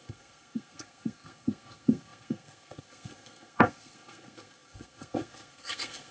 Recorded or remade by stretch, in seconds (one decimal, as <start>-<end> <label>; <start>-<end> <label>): 0.0-6.1 remade